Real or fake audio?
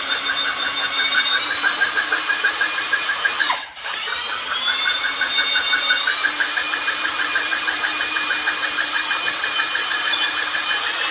fake